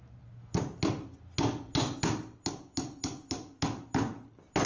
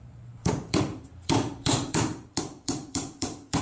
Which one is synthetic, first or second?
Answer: second